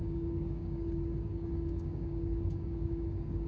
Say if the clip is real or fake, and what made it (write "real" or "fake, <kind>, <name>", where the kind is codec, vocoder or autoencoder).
fake, codec, DAC